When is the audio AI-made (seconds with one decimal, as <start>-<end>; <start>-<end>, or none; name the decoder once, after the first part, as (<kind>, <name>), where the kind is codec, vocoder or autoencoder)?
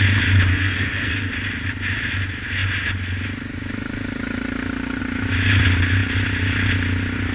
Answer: 0.5-1.3 (codec, SNAC)